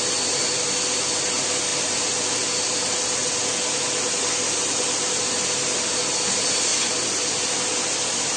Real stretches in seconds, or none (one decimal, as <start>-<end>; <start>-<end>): 0.0-8.4